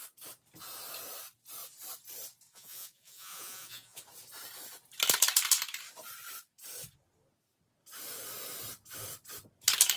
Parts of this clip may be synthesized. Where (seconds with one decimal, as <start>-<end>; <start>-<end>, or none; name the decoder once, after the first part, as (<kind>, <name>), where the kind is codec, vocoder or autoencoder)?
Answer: 2.5-4.0 (vocoder, Vocos)